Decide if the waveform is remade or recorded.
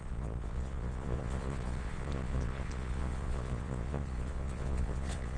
remade